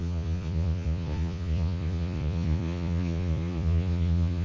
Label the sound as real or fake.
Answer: fake